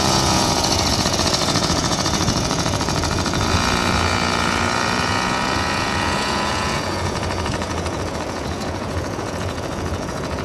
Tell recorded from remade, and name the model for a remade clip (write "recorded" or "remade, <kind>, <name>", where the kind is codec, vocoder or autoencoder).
remade, vocoder, Vocos